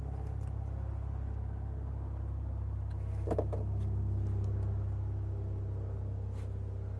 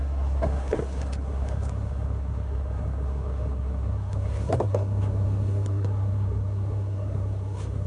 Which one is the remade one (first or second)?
second